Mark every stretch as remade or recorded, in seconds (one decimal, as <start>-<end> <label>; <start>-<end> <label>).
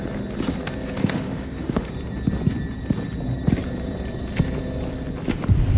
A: 0.0-1.0 recorded; 1.0-1.9 remade; 1.9-5.8 recorded